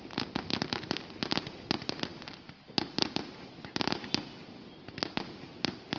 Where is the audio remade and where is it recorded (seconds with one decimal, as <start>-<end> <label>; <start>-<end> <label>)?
0.0-6.0 recorded